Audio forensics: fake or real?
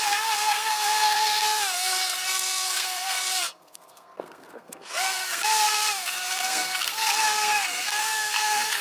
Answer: fake